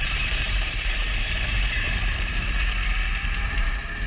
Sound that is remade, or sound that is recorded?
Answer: remade